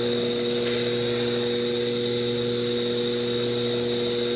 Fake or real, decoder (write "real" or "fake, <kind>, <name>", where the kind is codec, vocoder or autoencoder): real